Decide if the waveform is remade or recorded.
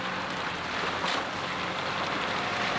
recorded